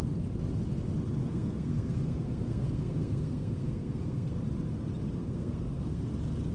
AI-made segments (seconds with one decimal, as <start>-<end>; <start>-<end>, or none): 1.2-4.4; 5.2-6.0